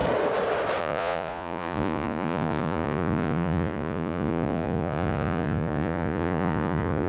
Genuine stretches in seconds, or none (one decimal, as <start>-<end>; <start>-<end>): 0.0-0.8